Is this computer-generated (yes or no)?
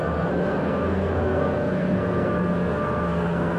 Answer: yes